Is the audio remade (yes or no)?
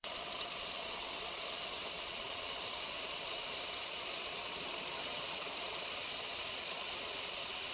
yes